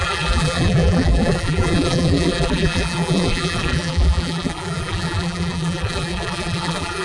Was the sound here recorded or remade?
remade